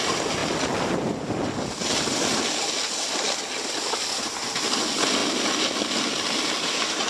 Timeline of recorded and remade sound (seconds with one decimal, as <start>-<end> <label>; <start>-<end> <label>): 0.0-7.1 recorded